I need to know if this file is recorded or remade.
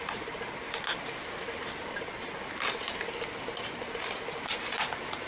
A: recorded